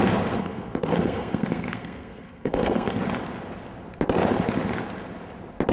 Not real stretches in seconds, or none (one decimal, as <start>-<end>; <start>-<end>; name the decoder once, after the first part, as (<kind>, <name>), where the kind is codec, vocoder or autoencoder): 0.4-3.0 (codec, SNAC)